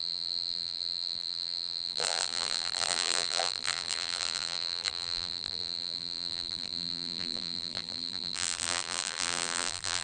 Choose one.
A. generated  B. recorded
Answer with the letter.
A